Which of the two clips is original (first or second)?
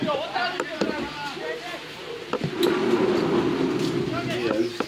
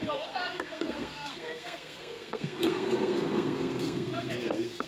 first